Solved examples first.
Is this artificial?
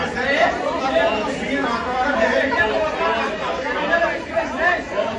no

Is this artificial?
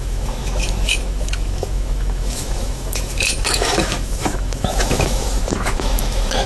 yes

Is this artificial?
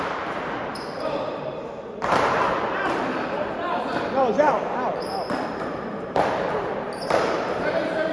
yes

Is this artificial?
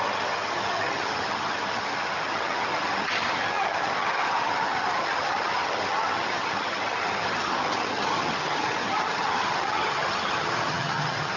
yes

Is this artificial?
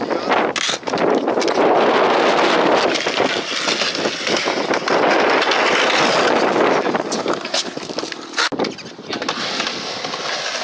no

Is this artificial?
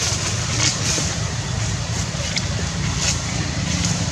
yes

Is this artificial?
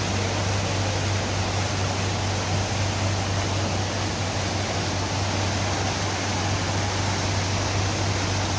no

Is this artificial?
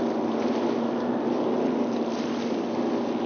no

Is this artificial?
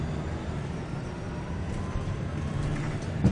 yes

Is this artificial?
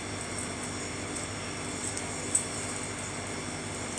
no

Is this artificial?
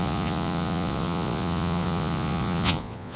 yes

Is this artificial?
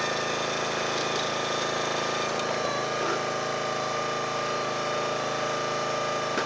no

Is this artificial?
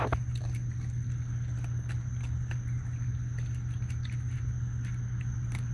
no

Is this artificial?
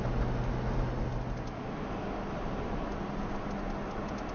no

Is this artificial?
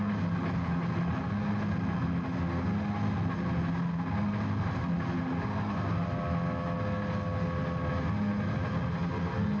no